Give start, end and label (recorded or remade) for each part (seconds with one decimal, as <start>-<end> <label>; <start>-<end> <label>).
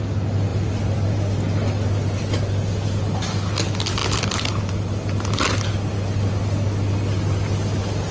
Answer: 0.0-0.5 recorded; 0.5-1.2 remade; 1.2-8.1 recorded